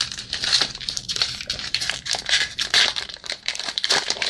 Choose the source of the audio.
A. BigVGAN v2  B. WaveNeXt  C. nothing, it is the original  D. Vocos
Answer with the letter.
A